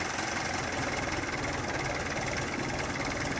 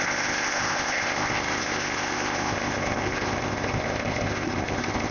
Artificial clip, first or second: second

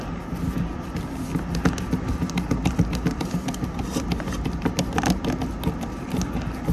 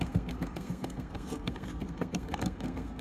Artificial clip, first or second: second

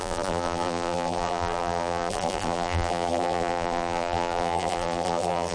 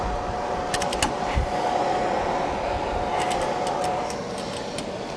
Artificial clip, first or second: first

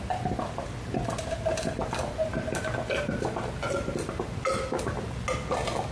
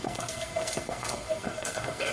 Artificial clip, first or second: second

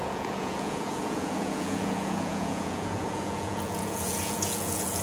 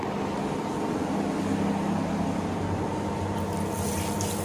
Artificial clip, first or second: first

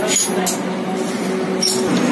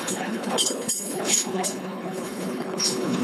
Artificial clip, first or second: second